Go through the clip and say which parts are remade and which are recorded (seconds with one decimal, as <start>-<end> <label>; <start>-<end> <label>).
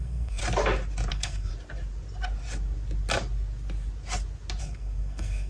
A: 0.0-0.4 remade; 0.4-1.1 recorded; 1.1-1.5 remade; 1.5-4.6 recorded; 4.6-5.5 remade